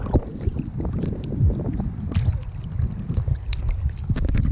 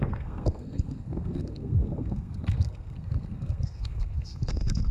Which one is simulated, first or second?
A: second